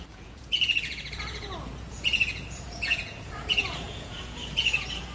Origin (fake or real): fake